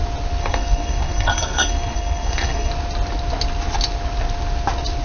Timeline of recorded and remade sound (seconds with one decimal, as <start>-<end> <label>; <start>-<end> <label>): 0.0-0.4 recorded; 0.4-2.7 remade; 2.7-5.0 recorded